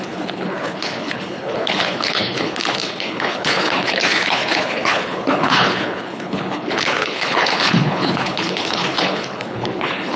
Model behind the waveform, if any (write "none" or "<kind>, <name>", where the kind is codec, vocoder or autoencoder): codec, HILCodec